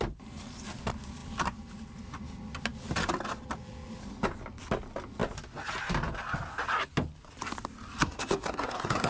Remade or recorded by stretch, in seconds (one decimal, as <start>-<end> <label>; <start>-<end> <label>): 0.0-8.0 recorded; 8.0-9.1 remade